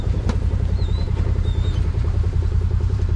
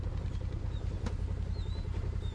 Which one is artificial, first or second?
first